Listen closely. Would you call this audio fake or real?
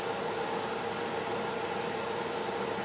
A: real